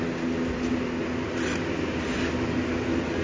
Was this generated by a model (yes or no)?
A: no